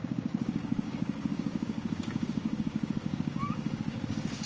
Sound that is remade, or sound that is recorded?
remade